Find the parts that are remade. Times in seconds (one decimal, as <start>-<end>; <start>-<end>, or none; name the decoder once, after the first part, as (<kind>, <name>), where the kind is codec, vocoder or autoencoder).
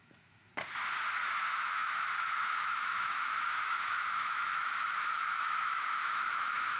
0.0-0.5 (autoencoder, DAC-VAE); 1.4-6.8